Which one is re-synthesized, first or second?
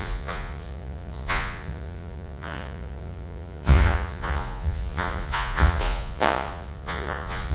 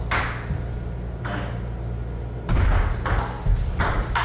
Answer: first